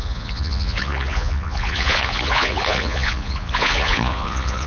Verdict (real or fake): fake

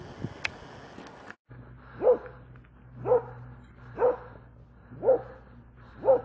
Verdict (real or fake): real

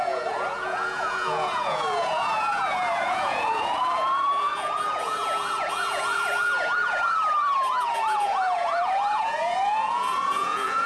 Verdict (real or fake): fake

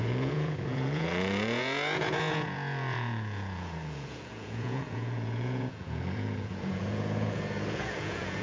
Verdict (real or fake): fake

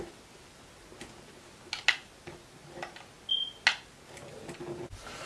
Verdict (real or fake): real